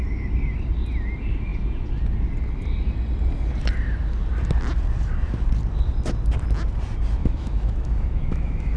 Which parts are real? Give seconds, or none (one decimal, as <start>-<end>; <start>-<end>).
0.0-7.2